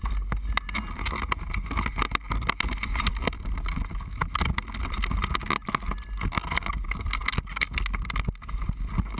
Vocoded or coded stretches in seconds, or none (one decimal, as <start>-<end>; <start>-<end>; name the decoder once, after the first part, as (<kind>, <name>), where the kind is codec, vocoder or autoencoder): none